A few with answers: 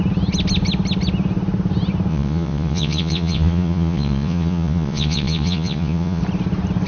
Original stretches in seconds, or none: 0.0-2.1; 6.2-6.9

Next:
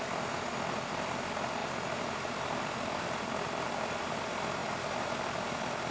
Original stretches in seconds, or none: 0.0-5.9

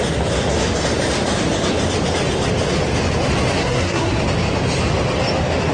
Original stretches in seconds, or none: 0.0-3.6; 4.2-5.7

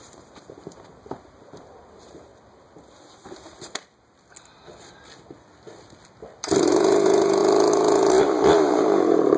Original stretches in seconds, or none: 2.3-6.6; 7.4-8.7

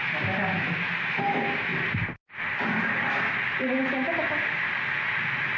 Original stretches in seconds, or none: 0.0-5.6

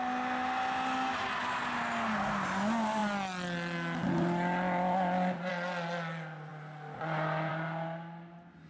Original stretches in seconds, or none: 0.0-8.7

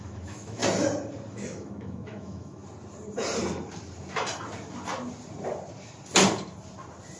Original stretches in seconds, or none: 0.6-1.3; 2.6-7.2

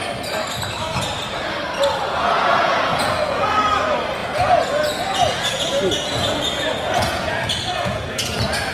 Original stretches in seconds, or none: 0.0-2.0; 3.5-4.2